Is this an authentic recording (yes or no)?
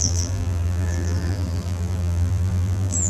no